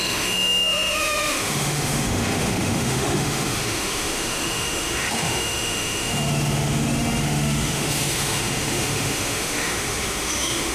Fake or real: fake